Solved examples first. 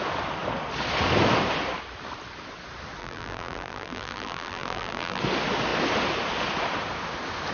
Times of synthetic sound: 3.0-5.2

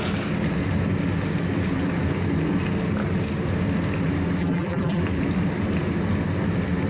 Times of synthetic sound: 4.4-5.0

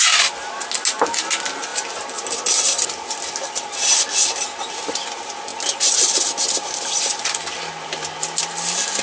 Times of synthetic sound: none

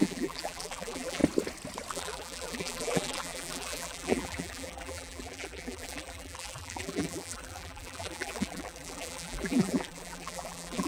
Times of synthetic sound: 0.0-1.2; 1.9-10.9